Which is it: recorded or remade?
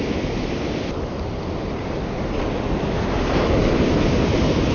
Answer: recorded